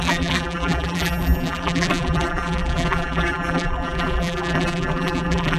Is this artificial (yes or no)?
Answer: yes